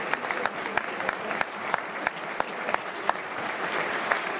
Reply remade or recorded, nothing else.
recorded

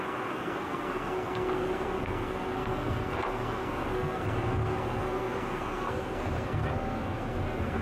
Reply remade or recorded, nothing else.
remade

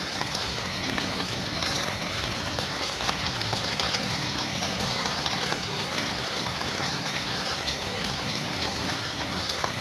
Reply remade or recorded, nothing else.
remade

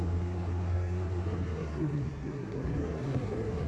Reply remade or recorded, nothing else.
remade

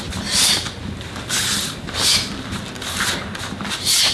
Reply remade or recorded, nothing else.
recorded